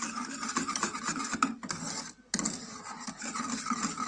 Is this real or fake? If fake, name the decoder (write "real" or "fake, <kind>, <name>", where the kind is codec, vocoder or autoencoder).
real